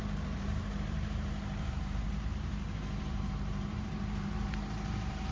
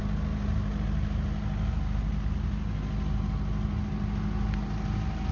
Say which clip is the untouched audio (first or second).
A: second